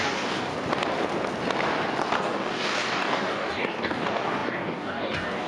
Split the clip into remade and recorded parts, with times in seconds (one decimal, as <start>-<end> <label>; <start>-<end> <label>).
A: 0.0-0.5 remade; 0.5-2.2 recorded; 2.2-5.5 remade